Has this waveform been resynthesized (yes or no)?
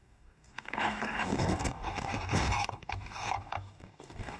yes